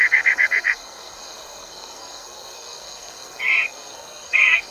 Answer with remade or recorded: remade